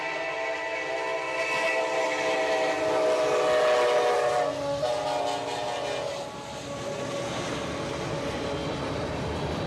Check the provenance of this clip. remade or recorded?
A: recorded